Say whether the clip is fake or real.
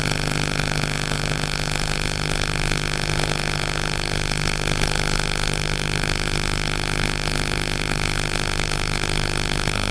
fake